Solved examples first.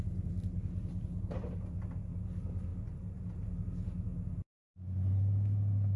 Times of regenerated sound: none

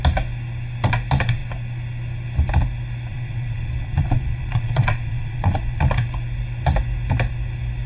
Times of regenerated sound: 3.1-5.8 (vocoder, Vocos)

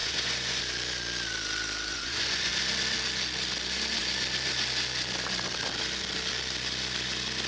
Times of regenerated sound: 0.0-0.6 (vocoder, Vocos); 1.9-2.5

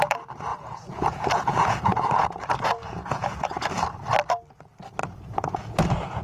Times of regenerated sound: 0.5-3.7 (vocoder, Vocos); 5.0-6.2

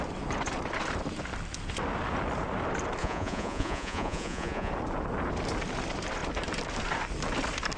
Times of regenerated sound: 3.0-4.7 (vocoder, Vocos)

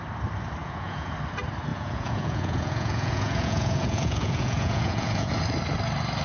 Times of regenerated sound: 0.6-1.1 (vocoder, Vocos); 1.7-5.4

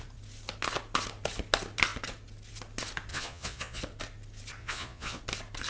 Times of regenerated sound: 3.1-3.8 (vocoder, Vocos); 4.6-5.2

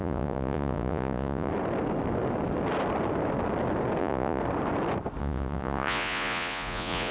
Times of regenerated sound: 0.0-1.5 (vocoder, Vocos); 4.0-4.4; 5.2-7.1